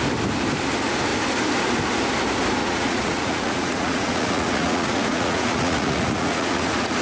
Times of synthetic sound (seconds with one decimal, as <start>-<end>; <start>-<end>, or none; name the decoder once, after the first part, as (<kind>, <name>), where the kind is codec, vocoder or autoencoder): 2.6-7.0 (vocoder, Vocos)